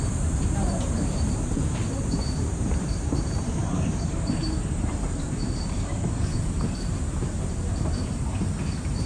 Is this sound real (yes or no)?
no